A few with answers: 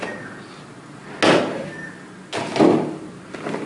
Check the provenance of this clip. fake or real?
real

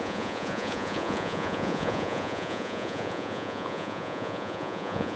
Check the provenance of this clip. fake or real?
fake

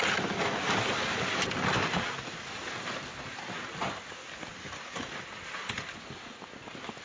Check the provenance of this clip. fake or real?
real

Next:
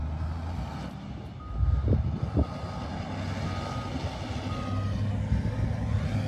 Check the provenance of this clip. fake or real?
real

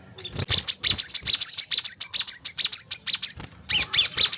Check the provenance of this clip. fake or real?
real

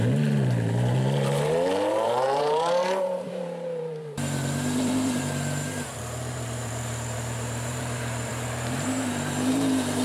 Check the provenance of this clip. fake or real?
fake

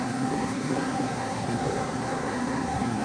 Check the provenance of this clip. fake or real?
fake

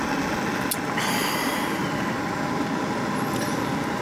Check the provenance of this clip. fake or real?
real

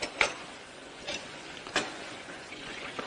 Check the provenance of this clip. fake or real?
fake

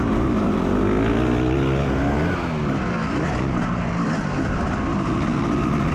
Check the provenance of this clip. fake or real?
real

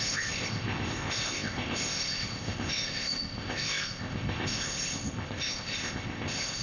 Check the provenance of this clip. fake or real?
fake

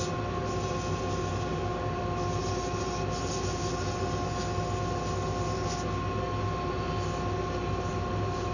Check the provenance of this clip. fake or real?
real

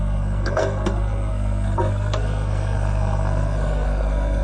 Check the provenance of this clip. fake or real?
fake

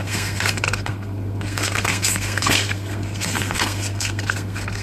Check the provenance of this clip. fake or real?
fake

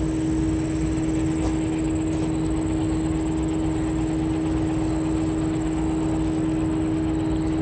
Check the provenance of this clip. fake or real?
real